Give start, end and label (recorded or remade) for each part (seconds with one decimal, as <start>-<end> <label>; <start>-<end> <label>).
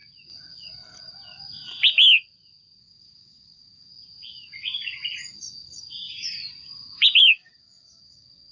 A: 0.0-2.8 recorded; 2.8-3.9 remade; 3.9-6.0 recorded; 6.0-6.4 remade; 6.4-7.2 recorded; 7.2-8.5 remade